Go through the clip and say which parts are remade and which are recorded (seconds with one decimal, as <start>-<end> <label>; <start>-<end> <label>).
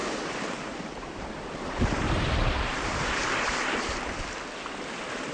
0.0-3.2 remade; 3.2-5.3 recorded